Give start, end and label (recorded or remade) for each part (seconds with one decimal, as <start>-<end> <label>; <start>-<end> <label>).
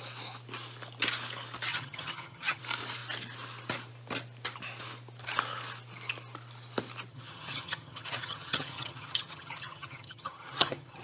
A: 0.0-1.7 recorded; 1.7-2.6 remade; 2.6-7.1 recorded; 7.1-11.0 remade